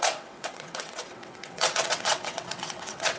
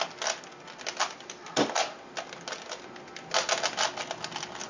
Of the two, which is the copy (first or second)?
first